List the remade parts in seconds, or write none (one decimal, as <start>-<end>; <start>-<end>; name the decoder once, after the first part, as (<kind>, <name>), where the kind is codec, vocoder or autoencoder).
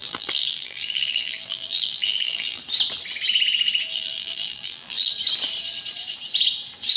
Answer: 0.0-2.6 (vocoder, BigVGAN v2); 3.9-5.1